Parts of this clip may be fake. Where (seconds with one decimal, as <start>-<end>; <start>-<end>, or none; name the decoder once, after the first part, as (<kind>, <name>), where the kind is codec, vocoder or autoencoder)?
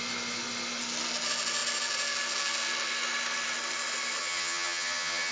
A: 4.2-5.3 (vocoder, HiFi-GAN)